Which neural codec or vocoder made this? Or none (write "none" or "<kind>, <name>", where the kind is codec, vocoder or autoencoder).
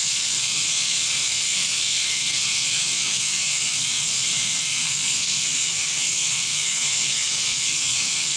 codec, SNAC